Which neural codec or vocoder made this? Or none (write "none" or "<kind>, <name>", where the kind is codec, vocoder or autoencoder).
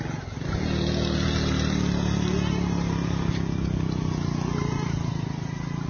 none